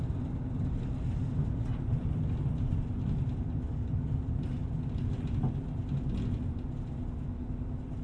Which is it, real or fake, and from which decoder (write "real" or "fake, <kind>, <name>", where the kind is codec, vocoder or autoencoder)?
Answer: real